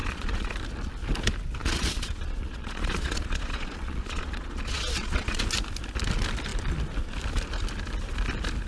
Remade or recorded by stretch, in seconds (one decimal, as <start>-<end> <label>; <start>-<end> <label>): 0.0-0.5 remade; 0.5-1.6 recorded; 1.6-5.4 remade; 5.4-8.7 recorded